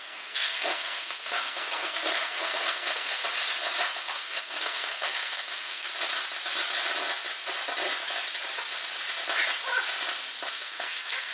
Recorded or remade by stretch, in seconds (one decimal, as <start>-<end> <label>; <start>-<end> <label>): 0.0-3.2 remade; 3.2-3.8 recorded; 3.8-5.9 remade; 5.9-10.5 recorded; 10.5-11.3 remade